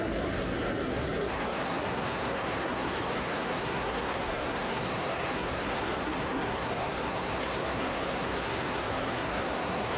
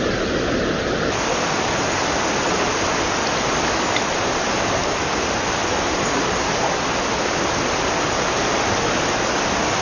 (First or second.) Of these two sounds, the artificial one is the first